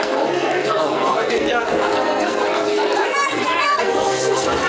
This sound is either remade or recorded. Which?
remade